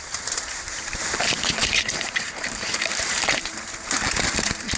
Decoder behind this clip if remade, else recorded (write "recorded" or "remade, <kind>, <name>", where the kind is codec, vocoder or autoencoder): remade, vocoder, BigVGAN v2